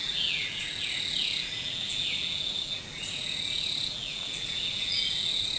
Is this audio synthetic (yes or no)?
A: yes